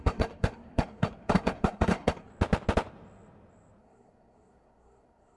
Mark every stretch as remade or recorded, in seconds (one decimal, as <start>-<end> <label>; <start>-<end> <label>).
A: 0.0-2.3 remade; 2.3-3.8 recorded; 3.8-5.4 remade